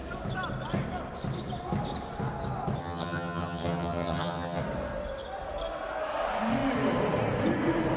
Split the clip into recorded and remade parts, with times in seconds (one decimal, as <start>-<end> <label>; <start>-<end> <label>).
0.0-2.8 recorded; 2.8-4.6 remade; 4.6-8.0 recorded